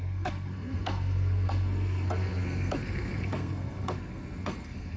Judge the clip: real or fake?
fake